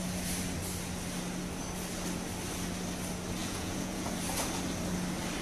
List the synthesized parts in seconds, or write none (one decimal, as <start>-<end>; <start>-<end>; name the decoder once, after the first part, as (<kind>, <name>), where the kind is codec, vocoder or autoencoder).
3.4-4.1 (vocoder, Vocos)